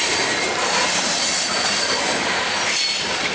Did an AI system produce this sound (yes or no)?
no